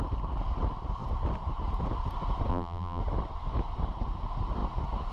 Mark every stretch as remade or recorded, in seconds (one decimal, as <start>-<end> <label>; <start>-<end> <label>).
0.0-2.5 recorded; 2.5-3.0 remade; 3.0-5.1 recorded